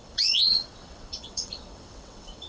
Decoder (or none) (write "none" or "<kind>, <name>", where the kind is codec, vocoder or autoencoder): vocoder, WaveNeXt